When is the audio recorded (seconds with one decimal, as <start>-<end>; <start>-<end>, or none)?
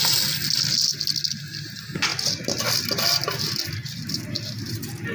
0.0-5.1